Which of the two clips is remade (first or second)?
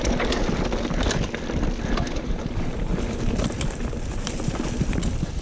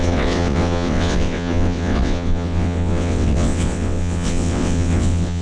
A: second